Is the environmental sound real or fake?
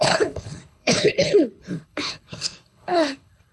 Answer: fake